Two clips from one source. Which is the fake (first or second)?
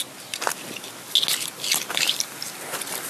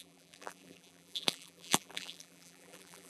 second